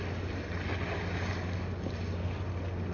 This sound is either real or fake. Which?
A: real